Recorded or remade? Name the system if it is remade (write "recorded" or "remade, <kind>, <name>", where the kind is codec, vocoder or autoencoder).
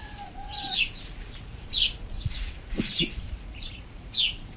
remade, vocoder, Vocos